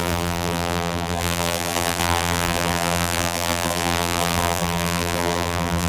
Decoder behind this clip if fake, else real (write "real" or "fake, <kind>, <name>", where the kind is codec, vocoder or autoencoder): fake, vocoder, BigVGAN v2